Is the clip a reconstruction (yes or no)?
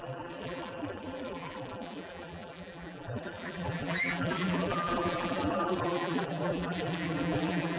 yes